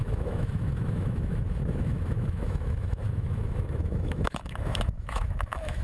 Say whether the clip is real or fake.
fake